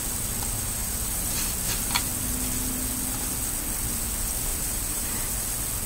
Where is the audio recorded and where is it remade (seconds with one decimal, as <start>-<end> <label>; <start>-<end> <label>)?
0.0-0.8 recorded; 0.8-1.4 remade; 1.4-4.5 recorded; 4.5-5.3 remade; 5.3-5.9 recorded